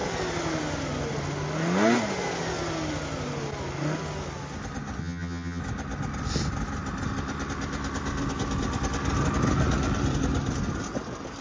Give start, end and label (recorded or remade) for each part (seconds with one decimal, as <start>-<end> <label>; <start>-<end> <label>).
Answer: 0.0-5.0 recorded; 5.0-5.6 remade; 5.6-11.4 recorded